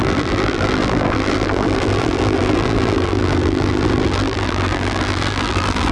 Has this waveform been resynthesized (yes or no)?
yes